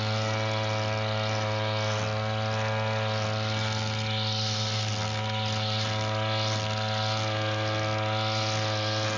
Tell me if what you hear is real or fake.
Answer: real